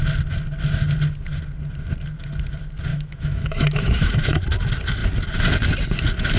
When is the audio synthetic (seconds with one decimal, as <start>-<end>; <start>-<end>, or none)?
2.9-4.4